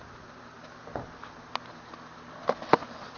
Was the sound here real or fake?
real